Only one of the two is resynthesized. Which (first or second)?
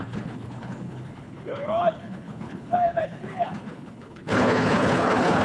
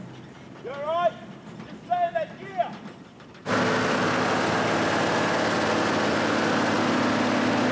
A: first